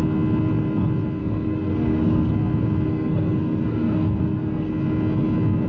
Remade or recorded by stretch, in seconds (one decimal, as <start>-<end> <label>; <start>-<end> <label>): 0.0-1.2 recorded; 1.2-2.3 remade; 2.3-2.9 recorded; 2.9-4.7 remade; 4.7-5.7 recorded